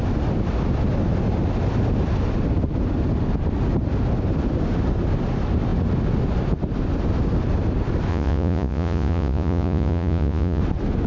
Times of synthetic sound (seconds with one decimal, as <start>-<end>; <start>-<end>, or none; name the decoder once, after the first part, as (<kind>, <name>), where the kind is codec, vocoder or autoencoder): 8.1-10.6 (vocoder, Vocos)